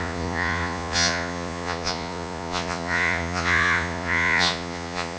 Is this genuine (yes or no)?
no